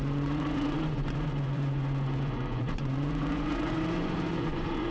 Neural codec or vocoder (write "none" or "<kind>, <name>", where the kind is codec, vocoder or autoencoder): vocoder, Vocos